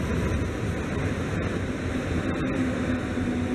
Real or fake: real